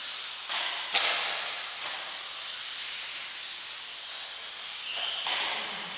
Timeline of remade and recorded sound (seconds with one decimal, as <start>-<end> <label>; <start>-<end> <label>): 0.0-6.0 recorded